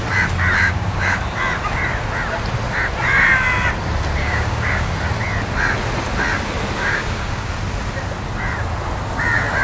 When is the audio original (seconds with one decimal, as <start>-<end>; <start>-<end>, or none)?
0.0-0.6; 1.2-4.2; 4.9-6.8; 7.5-9.6